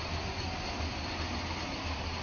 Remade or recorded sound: recorded